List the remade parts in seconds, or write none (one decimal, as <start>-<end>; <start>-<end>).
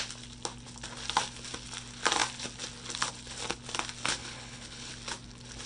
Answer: 4.2-4.9